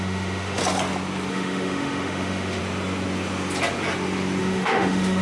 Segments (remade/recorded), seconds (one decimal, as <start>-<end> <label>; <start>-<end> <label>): 0.0-0.6 remade; 0.6-1.3 recorded; 1.3-2.6 remade; 2.6-4.4 recorded; 4.4-5.2 remade